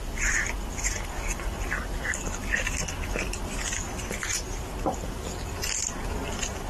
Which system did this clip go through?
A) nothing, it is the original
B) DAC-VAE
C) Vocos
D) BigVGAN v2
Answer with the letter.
A